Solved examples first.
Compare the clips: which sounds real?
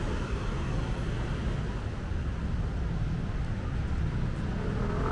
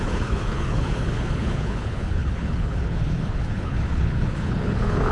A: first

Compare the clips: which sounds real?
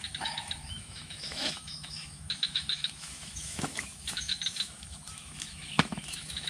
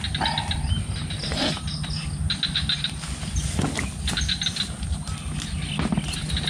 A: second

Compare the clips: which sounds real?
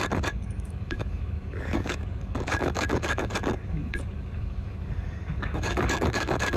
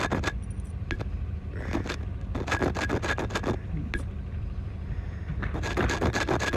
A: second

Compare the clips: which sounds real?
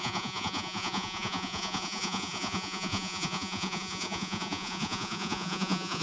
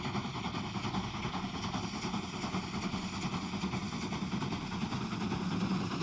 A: second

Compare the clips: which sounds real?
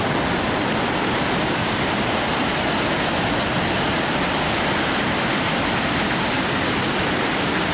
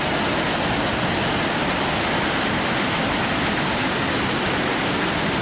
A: second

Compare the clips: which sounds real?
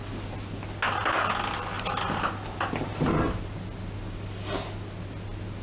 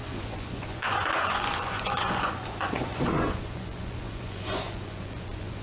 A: first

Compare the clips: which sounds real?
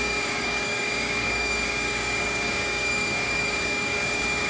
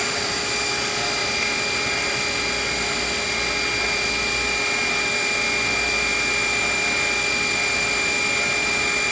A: second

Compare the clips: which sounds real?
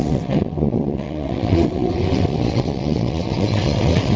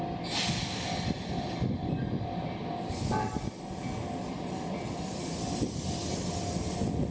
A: second